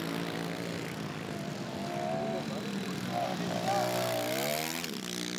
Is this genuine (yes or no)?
yes